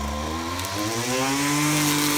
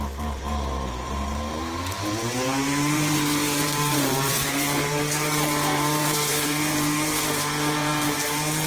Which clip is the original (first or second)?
first